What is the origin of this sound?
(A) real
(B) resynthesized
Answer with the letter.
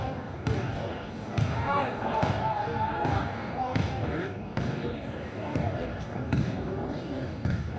B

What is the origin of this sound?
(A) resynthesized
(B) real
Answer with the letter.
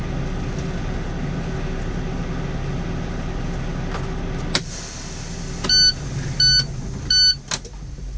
B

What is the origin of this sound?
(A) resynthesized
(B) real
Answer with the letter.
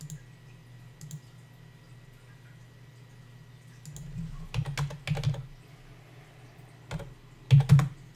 B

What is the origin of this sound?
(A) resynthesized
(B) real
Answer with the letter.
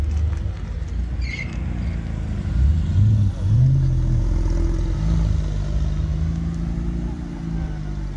B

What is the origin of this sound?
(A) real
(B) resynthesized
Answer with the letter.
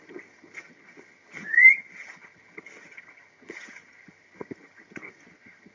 B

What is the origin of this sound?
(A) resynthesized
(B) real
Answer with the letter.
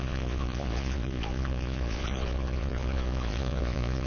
A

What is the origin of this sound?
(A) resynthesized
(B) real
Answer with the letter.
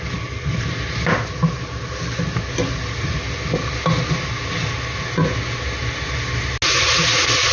B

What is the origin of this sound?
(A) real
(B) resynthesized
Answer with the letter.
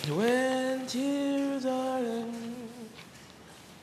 A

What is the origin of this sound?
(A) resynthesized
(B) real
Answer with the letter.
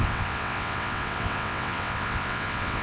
A